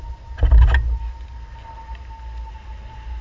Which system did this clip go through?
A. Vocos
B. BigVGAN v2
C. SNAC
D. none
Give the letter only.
D